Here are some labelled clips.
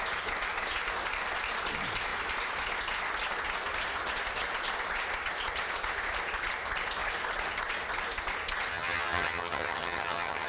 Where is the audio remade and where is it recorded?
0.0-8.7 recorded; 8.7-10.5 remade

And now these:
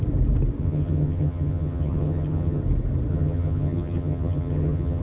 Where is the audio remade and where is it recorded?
0.0-0.6 recorded; 0.6-2.6 remade; 2.6-3.1 recorded; 3.1-5.0 remade

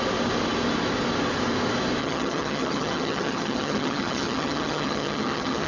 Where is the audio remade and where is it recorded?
0.0-2.0 recorded; 2.0-5.7 remade